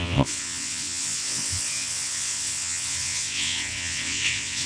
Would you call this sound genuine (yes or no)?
no